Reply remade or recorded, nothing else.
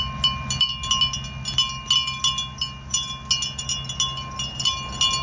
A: recorded